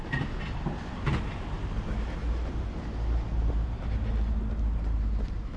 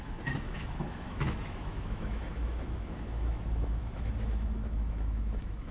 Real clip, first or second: first